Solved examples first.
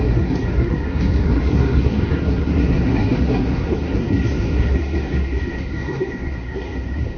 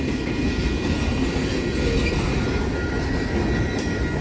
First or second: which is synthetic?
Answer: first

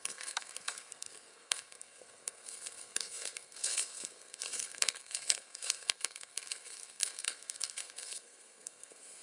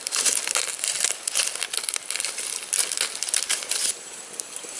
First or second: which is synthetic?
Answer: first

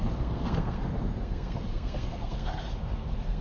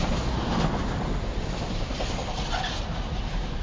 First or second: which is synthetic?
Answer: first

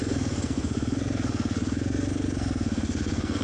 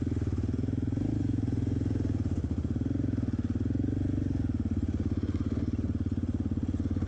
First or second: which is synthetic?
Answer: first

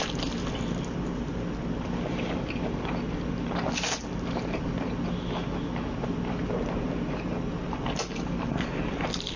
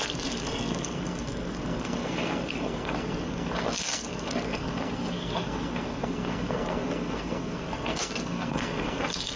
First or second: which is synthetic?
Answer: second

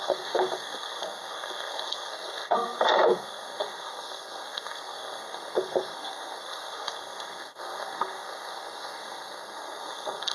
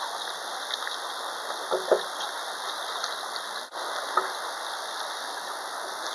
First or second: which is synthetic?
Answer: first